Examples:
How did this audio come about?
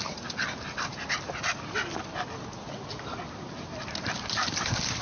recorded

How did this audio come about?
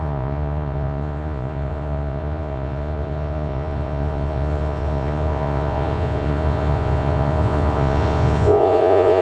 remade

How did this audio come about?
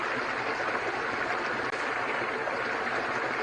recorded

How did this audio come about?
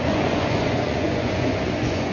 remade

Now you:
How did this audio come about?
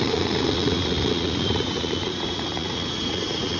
remade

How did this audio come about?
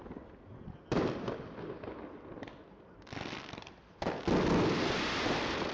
recorded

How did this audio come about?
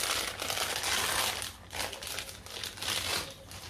recorded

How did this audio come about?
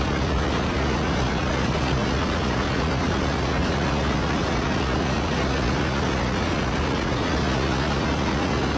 remade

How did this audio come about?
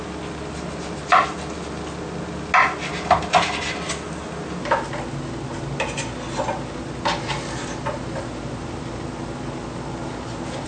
recorded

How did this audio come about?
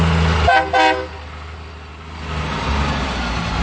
recorded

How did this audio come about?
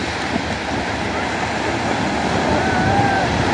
recorded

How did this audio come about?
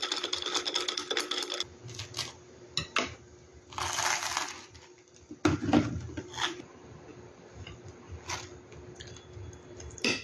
recorded